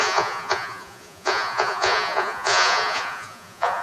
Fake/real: fake